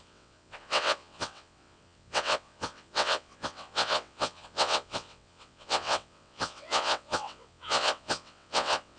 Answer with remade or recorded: remade